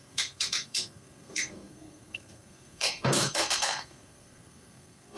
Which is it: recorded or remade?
remade